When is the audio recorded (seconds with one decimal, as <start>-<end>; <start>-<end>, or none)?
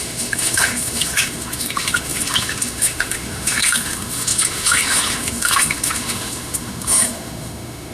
none